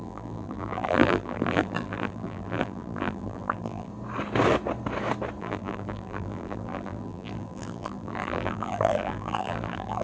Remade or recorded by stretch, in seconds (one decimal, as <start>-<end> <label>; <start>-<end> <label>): 0.0-3.9 remade; 3.9-5.4 recorded; 5.4-10.0 remade